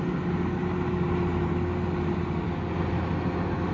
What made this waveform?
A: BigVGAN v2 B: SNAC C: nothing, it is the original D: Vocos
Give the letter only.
C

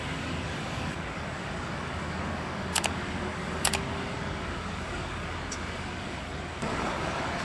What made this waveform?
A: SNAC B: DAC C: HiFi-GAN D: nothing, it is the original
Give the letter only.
B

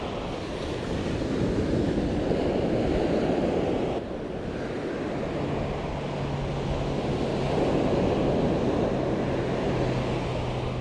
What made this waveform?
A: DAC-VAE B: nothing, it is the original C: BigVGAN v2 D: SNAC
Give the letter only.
B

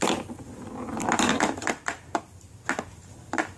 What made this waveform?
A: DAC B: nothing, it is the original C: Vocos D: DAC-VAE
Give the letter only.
B